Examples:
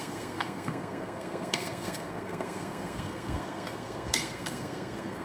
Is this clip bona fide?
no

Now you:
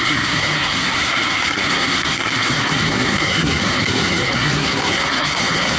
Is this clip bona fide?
no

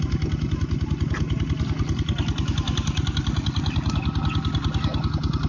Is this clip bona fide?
yes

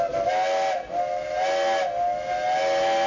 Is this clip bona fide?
yes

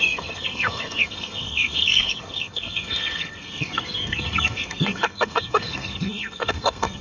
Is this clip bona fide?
no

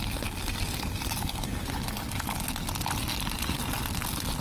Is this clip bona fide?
yes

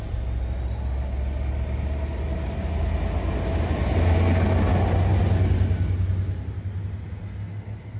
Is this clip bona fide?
yes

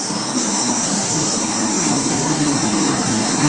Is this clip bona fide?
no